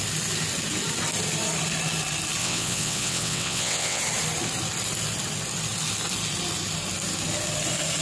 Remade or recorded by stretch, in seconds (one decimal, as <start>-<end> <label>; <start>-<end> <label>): 0.0-2.4 recorded; 2.4-4.0 remade; 4.0-8.0 recorded